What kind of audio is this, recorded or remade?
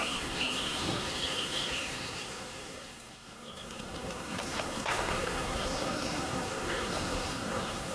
remade